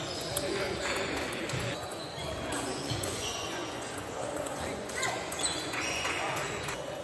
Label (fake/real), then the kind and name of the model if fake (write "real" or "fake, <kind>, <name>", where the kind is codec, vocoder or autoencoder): fake, vocoder, Vocos